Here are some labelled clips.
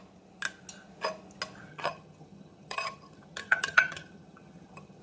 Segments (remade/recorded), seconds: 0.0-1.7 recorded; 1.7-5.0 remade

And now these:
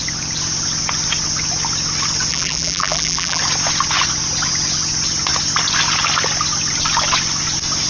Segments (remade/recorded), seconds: 0.0-2.3 recorded; 2.3-3.4 remade; 3.4-7.9 recorded

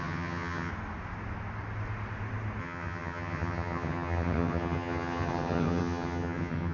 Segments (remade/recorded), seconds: 0.0-0.7 remade; 0.7-2.6 recorded; 2.6-6.7 remade

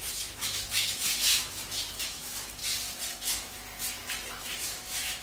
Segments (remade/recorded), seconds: 0.0-2.6 remade; 2.6-3.1 recorded; 3.1-3.7 remade; 3.7-4.4 recorded; 4.4-5.2 remade

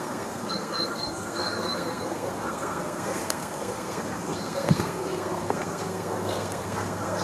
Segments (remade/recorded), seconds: 0.0-7.2 remade

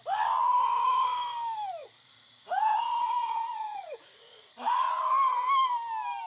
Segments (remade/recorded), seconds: 0.0-1.8 recorded; 1.8-4.9 remade; 4.9-6.3 recorded